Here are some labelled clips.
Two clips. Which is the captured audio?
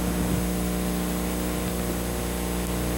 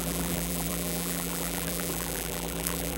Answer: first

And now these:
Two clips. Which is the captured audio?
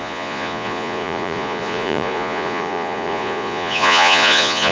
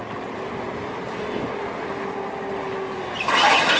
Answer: second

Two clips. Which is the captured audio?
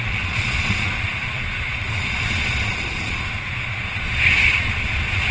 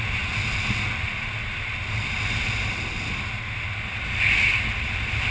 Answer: second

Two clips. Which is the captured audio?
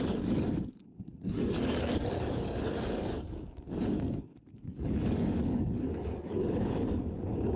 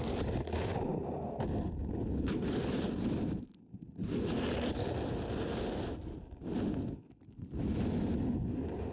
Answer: second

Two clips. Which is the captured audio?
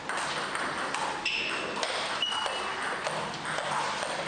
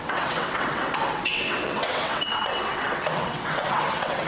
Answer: first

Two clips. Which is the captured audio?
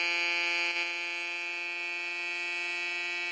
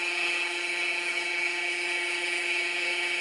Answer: first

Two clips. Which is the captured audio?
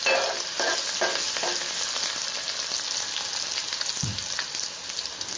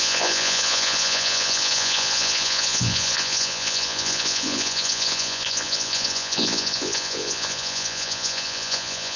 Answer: first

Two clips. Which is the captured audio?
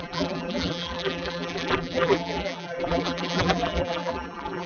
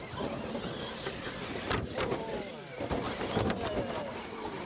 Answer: second